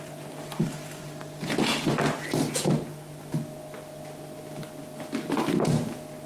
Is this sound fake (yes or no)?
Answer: no